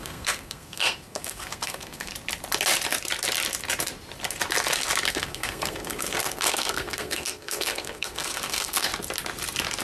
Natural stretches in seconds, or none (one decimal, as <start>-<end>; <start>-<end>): 2.1-5.1; 8.9-9.8